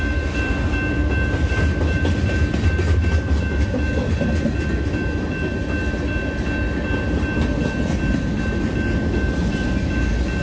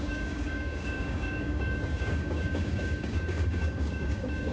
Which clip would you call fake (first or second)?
second